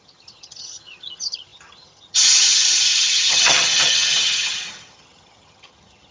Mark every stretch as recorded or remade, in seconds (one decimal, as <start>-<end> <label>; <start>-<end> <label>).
0.0-6.1 remade